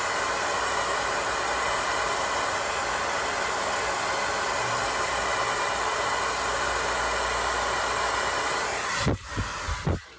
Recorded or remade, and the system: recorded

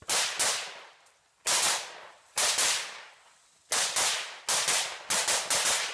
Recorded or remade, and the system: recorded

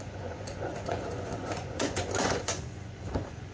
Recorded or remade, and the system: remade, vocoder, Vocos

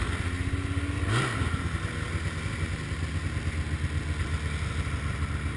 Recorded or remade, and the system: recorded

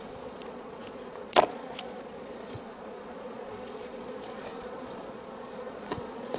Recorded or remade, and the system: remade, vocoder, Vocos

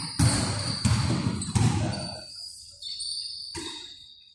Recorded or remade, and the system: recorded